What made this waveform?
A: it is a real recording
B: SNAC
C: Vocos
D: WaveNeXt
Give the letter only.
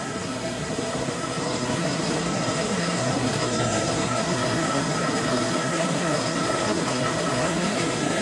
B